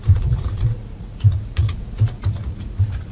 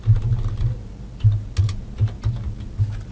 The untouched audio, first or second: second